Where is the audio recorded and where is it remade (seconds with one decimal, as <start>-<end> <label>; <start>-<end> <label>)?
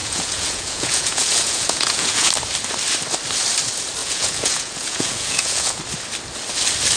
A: 0.0-2.3 remade; 2.3-4.0 recorded; 4.0-5.8 remade; 5.8-7.0 recorded